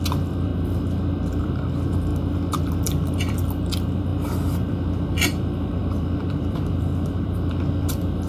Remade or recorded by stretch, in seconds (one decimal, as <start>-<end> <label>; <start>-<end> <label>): 0.0-0.5 remade; 0.5-1.4 recorded; 1.4-2.1 remade; 2.1-2.8 recorded; 2.8-8.3 remade